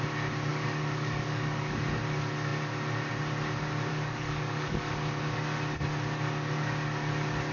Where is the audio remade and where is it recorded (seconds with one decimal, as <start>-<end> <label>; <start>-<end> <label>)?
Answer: 0.0-0.5 recorded; 0.5-1.8 remade; 1.8-3.9 recorded; 3.9-4.9 remade; 4.9-7.5 recorded